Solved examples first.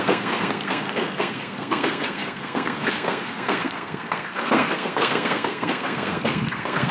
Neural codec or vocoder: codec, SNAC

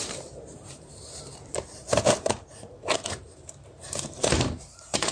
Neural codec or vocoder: vocoder, BigVGAN v2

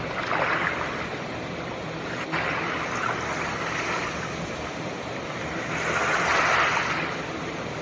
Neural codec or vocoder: none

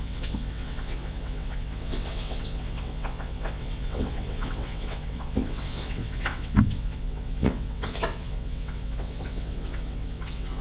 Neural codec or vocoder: vocoder, WaveNeXt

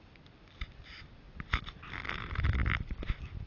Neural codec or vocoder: none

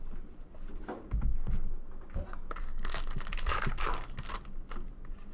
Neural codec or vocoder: none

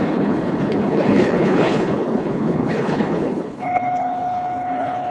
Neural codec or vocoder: codec, HILCodec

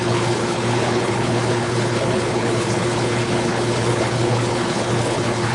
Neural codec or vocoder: codec, HILCodec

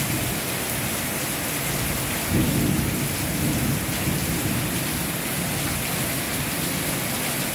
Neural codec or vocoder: none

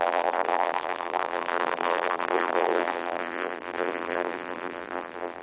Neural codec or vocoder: vocoder, BigVGAN v2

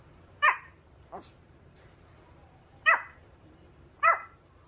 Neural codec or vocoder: vocoder, BigVGAN v2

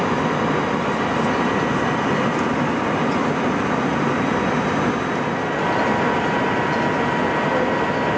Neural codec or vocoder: none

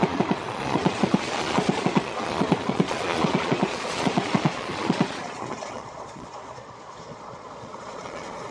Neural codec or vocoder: vocoder, Vocos